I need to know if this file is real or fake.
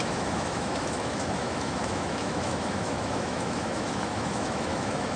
fake